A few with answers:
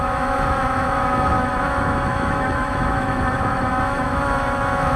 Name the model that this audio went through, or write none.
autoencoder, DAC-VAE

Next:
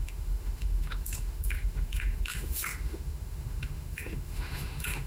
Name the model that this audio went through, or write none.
autoencoder, DAC-VAE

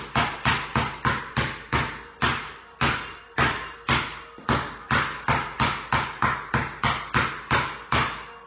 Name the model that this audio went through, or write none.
none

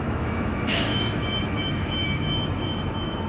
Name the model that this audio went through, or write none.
autoencoder, DAC-VAE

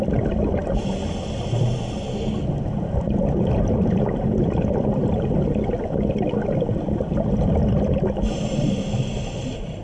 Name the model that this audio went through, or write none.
none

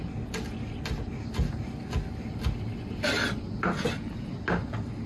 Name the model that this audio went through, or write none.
none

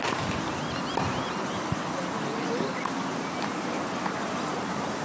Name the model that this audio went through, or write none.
none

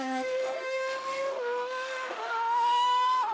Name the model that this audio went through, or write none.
autoencoder, DAC-VAE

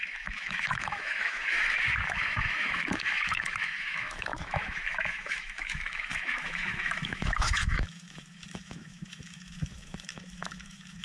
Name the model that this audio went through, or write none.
autoencoder, DAC-VAE